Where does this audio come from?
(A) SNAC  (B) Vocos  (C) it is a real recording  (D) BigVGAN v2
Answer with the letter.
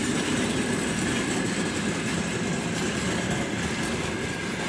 C